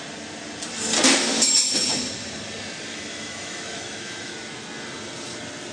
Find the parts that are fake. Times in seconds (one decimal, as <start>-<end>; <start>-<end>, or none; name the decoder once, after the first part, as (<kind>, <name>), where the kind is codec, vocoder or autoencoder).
2.9-4.3 (autoencoder, DAC-VAE)